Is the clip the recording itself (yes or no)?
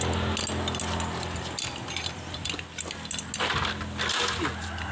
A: yes